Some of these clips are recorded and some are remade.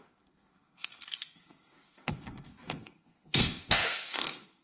remade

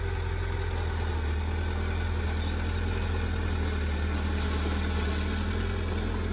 recorded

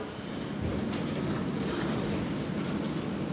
recorded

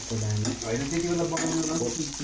recorded